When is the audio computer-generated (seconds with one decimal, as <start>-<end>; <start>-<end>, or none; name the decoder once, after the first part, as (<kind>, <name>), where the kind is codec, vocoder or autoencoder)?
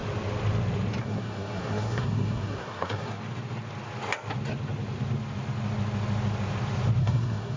1.0-3.2 (codec, SNAC); 7.0-7.6